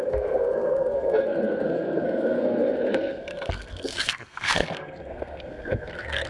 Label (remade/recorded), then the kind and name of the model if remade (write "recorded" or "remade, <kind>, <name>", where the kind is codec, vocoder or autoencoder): remade, codec, SNAC